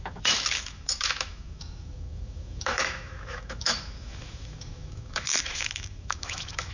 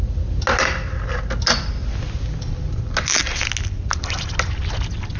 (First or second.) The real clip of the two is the second